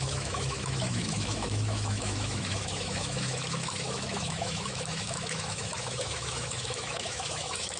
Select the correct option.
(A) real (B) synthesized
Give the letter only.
B